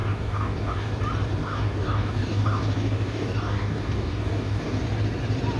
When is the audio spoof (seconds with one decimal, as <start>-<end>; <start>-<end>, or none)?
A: 0.0-0.9; 1.4-4.8